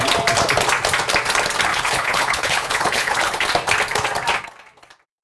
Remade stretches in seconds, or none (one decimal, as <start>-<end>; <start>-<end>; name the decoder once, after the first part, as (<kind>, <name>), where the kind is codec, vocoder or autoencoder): 1.7-3.5 (codec, HILCodec)